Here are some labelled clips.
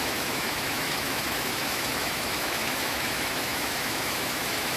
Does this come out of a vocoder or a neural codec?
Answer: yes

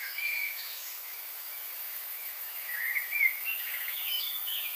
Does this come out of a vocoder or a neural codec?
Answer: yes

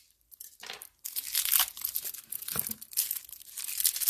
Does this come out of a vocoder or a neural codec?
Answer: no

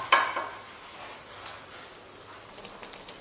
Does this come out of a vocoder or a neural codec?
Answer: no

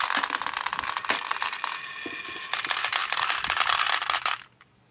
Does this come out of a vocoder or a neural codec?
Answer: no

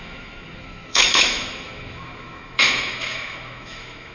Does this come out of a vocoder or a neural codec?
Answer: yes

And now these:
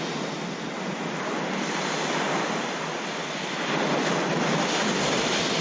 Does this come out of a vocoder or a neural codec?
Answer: no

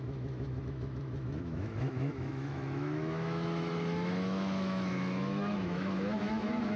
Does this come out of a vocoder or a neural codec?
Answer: yes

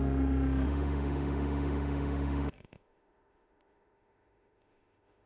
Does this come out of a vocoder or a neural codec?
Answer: yes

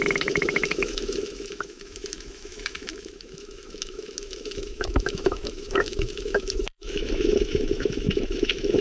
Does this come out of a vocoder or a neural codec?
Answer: yes